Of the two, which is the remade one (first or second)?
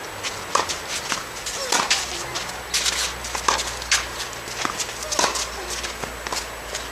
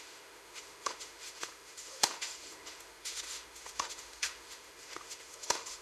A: second